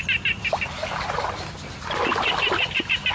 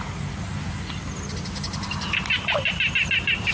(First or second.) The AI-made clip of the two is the second